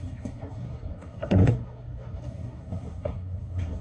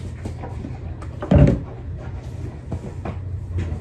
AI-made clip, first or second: first